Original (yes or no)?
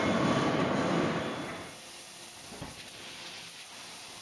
yes